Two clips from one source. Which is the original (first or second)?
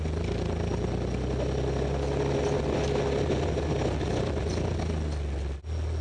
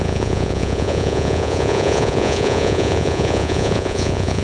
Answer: first